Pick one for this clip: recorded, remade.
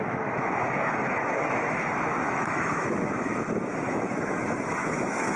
remade